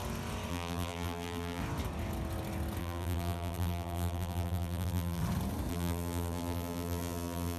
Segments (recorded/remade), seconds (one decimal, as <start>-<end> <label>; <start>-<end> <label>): 0.0-0.5 recorded; 0.5-1.6 remade; 1.6-2.8 recorded; 2.8-5.2 remade; 5.2-5.7 recorded; 5.7-7.6 remade